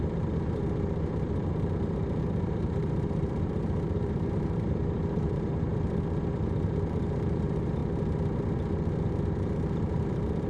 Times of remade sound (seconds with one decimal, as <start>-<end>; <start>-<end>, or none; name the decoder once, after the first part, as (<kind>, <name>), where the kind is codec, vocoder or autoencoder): 0.0-5.7 (vocoder, BigVGAN v2); 6.3-7.8; 9.4-10.5